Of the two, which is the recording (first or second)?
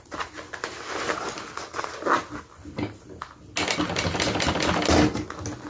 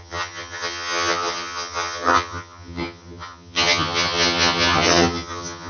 first